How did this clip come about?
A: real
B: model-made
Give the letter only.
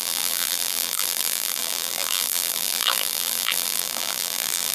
B